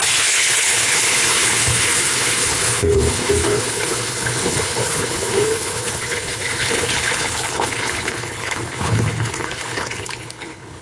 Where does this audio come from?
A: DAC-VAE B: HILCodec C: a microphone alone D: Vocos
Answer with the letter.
B